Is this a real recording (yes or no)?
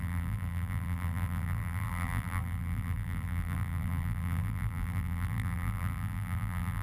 no